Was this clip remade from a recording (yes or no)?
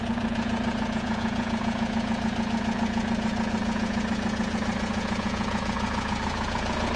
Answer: yes